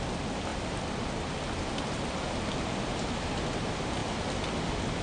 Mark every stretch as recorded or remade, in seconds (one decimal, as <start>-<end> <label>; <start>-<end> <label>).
0.0-5.0 recorded